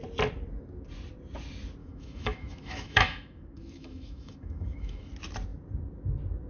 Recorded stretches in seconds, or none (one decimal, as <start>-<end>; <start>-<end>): 0.0-1.8; 5.1-6.5